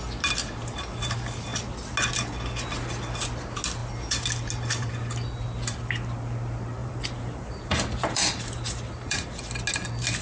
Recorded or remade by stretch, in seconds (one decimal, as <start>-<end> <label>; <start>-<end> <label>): 0.0-6.8 recorded; 6.8-9.4 remade; 9.4-10.2 recorded